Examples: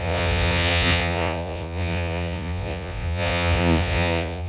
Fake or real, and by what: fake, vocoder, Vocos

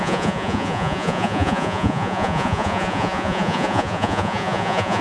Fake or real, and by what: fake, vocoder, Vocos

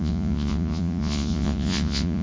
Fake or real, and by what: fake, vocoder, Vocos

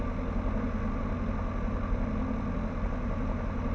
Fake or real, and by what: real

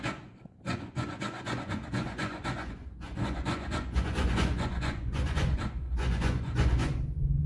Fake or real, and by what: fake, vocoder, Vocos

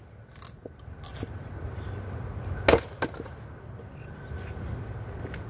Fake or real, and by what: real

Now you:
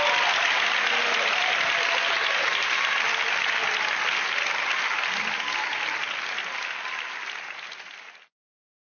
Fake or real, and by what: real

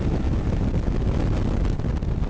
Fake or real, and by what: real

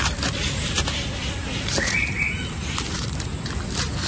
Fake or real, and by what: real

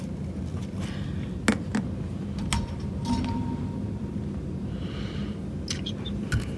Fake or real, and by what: real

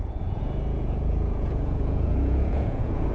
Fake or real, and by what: fake, vocoder, Vocos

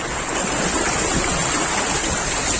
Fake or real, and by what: real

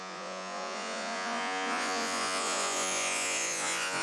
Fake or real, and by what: fake, vocoder, Vocos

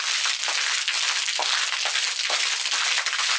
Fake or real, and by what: real